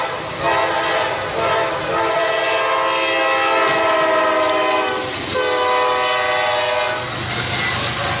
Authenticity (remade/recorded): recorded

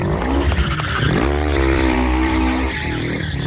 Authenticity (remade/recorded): remade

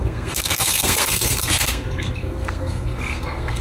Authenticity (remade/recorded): remade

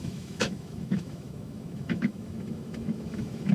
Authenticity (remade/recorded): remade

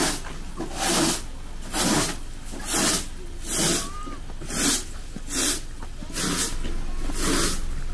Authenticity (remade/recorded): recorded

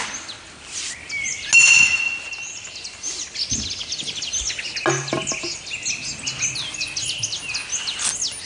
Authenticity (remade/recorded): recorded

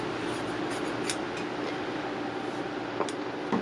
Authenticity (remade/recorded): recorded